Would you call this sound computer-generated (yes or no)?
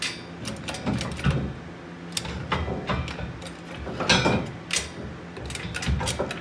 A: no